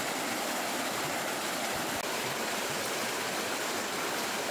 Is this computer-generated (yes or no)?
no